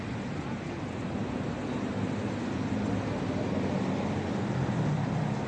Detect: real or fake real